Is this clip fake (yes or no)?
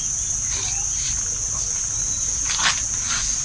no